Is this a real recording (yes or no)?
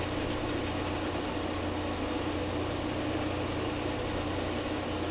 yes